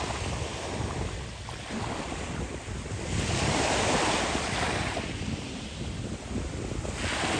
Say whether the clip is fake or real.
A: real